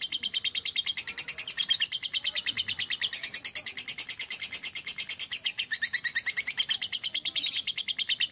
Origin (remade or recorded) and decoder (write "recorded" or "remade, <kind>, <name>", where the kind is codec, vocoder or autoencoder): recorded